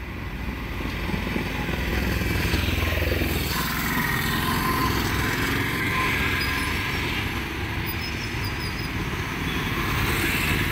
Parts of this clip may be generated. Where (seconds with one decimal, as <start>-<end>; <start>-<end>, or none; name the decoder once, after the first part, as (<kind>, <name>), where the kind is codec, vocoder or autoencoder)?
none